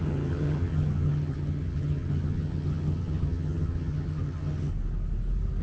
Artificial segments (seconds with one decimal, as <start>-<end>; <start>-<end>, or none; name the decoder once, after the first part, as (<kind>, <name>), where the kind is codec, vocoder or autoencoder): 0.0-4.7 (vocoder, HiFi-GAN)